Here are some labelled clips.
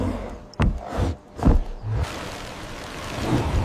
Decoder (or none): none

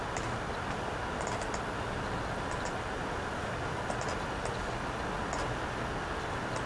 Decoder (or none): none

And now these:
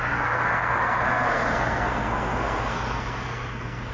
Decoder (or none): codec, SNAC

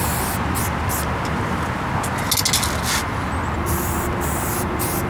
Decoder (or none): none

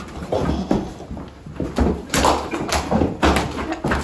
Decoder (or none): none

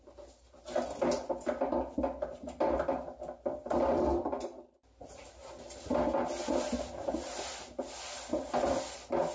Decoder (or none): none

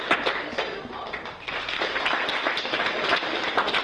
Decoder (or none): none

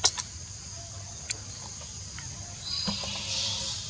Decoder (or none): none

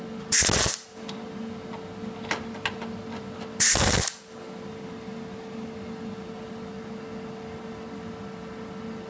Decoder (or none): none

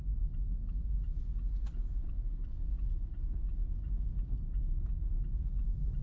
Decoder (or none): none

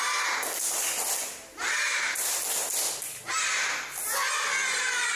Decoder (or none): none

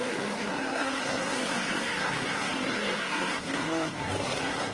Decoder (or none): codec, SNAC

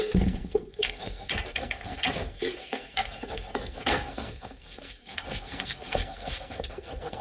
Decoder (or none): codec, SNAC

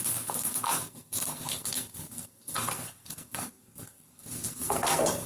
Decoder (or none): codec, SNAC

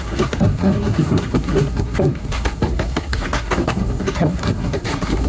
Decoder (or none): codec, SNAC